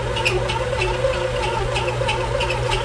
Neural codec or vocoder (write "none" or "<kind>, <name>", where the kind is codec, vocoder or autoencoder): none